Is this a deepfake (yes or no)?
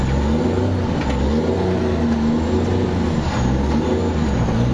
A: no